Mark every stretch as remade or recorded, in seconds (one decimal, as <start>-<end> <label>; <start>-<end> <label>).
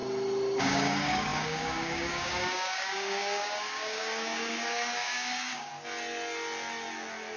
0.0-0.6 recorded; 0.6-5.7 remade; 5.7-7.4 recorded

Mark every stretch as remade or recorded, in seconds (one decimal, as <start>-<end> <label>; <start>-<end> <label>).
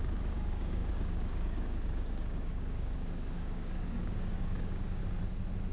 0.0-5.0 remade; 5.0-5.7 recorded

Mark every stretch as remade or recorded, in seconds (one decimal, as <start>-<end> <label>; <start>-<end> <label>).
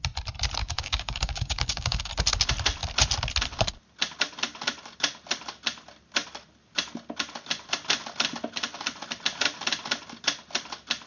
0.0-0.6 recorded; 0.6-2.1 remade; 2.1-11.1 recorded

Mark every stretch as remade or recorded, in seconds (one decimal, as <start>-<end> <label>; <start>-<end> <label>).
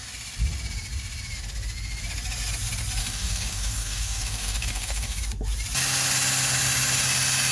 0.0-3.0 recorded; 3.0-5.2 remade; 5.2-7.5 recorded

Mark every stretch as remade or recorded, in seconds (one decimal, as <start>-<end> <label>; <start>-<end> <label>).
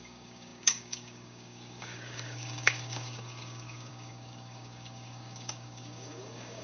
0.0-6.6 remade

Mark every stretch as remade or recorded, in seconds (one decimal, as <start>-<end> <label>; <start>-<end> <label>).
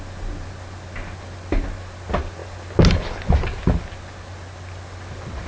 0.0-5.5 recorded